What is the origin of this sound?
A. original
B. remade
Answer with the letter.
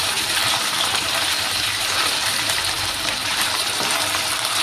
B